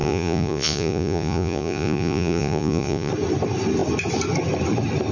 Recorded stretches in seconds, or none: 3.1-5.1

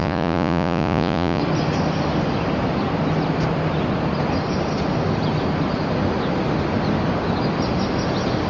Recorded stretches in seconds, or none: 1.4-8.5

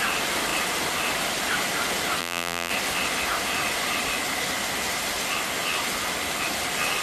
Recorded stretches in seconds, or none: 0.0-2.2; 2.7-7.0